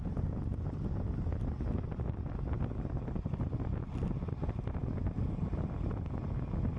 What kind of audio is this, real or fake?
real